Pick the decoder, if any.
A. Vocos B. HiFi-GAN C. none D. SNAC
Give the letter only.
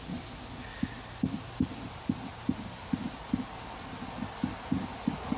C